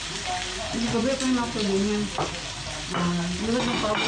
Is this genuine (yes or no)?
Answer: yes